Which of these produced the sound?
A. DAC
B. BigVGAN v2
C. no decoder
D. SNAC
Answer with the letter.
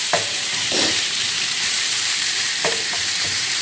B